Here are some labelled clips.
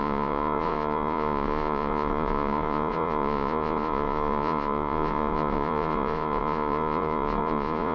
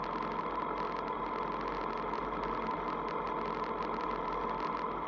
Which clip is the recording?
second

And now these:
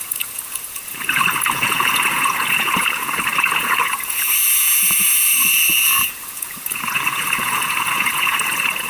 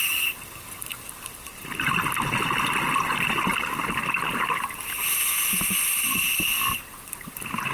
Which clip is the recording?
second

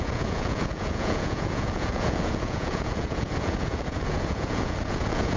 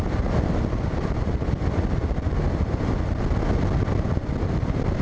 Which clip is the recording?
second